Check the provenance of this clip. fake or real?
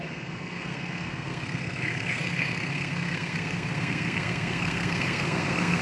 fake